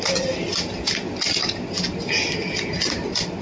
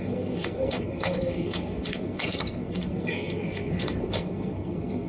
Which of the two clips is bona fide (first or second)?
first